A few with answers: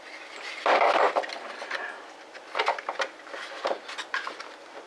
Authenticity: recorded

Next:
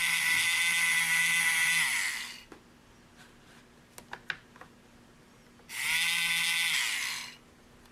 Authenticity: recorded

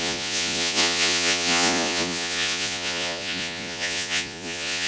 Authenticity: remade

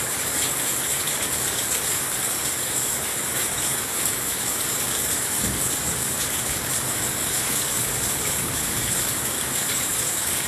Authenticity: remade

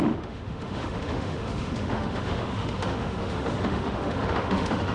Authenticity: remade